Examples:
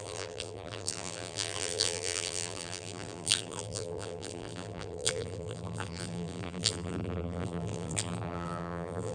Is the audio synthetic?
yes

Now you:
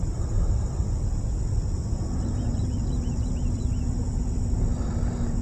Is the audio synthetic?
no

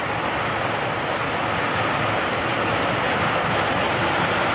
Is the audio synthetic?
no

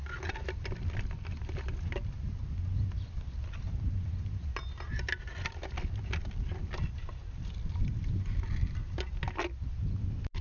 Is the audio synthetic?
no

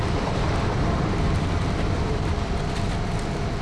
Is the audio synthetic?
yes